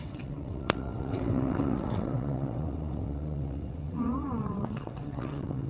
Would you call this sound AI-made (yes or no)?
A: yes